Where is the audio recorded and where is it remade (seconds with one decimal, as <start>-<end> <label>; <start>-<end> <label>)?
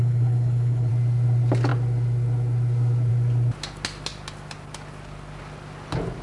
0.0-0.9 remade; 0.9-6.2 recorded